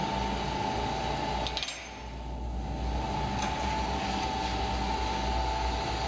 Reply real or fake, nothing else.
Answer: real